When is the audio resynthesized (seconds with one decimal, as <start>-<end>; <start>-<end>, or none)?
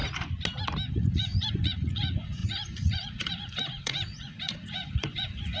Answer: 0.9-5.6